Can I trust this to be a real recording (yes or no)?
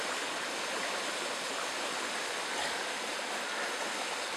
yes